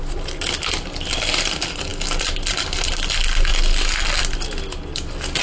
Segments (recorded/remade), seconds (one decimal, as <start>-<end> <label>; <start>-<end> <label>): 0.0-5.4 recorded

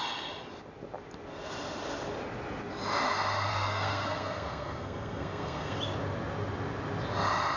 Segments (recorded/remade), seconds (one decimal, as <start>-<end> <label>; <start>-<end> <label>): 0.0-3.5 recorded; 3.5-5.8 remade; 5.8-7.6 recorded

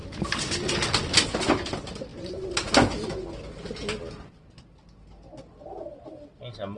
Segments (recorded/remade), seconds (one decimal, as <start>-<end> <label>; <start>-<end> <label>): 0.0-6.8 recorded

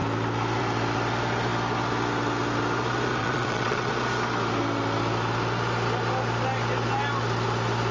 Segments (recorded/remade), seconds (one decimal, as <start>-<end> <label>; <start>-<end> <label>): 0.0-3.2 recorded; 3.2-3.9 remade; 3.9-7.9 recorded

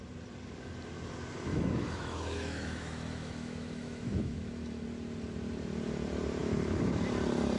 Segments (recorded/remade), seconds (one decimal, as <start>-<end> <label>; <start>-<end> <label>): 0.0-1.5 recorded; 1.5-4.8 remade; 4.8-6.4 recorded; 6.4-7.0 remade; 7.0-7.6 recorded

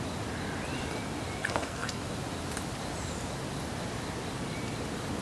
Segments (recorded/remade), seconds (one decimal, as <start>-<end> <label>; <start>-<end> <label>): 0.0-1.4 recorded; 1.4-2.0 remade; 2.0-5.2 recorded